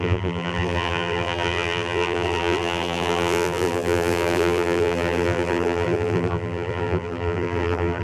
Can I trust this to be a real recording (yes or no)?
no